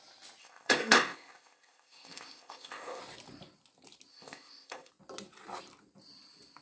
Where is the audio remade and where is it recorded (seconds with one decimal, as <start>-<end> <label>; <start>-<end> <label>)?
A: 0.0-0.4 recorded; 0.4-3.0 remade; 3.0-4.1 recorded; 4.1-4.9 remade; 4.9-6.6 recorded